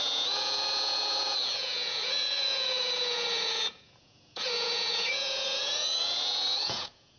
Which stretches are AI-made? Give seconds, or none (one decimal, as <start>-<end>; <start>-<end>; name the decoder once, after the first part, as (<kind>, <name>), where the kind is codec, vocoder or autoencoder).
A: 0.0-7.2 (vocoder, Vocos)